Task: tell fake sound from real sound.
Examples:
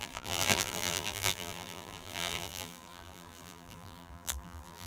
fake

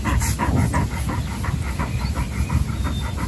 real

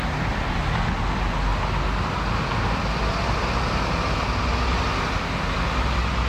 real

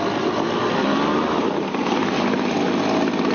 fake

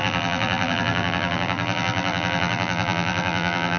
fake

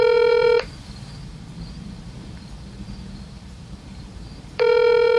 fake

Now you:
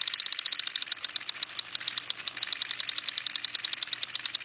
fake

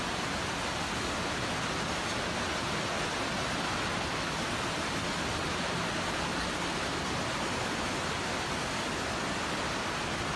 real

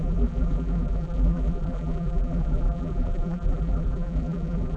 fake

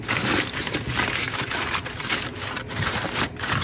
fake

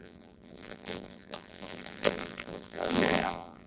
fake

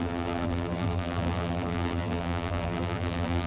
fake